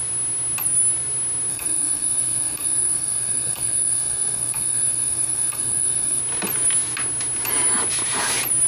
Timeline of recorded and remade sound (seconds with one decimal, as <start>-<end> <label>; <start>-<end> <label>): 0.0-1.5 recorded; 1.5-6.2 remade; 6.2-8.7 recorded